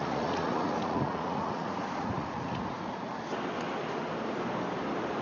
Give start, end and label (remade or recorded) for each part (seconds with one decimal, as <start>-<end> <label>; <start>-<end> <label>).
0.0-3.1 remade; 3.1-5.2 recorded